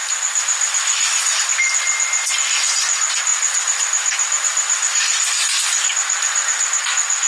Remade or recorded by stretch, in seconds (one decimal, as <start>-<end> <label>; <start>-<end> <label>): 0.0-1.4 remade; 1.4-3.3 recorded; 3.3-6.8 remade; 6.8-7.3 recorded